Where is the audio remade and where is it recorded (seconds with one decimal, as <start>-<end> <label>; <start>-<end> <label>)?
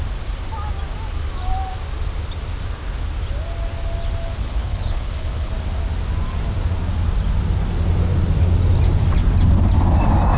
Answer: 0.0-4.4 recorded; 4.4-5.5 remade; 5.5-10.4 recorded